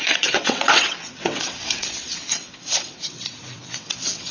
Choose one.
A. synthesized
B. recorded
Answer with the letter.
A